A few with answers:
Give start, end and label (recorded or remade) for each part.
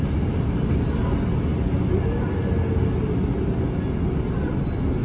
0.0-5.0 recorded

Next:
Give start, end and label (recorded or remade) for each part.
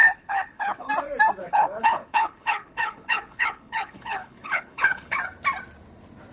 0.0-0.9 remade; 0.9-1.4 recorded; 1.4-5.2 remade; 5.2-6.3 recorded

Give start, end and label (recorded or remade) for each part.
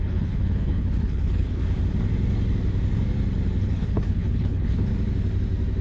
0.0-1.6 remade; 1.6-3.6 recorded; 3.6-4.9 remade; 4.9-5.8 recorded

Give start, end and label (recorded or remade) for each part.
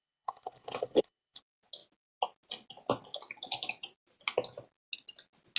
0.0-1.4 remade; 1.4-5.6 recorded